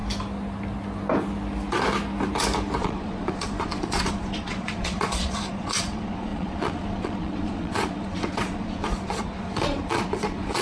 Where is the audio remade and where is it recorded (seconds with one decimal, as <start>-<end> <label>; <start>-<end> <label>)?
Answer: 0.0-2.8 recorded; 2.8-10.6 remade